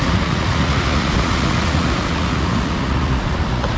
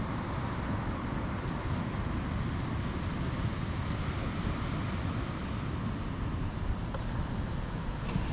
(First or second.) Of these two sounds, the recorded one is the second